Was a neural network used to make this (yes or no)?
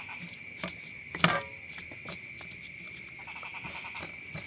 no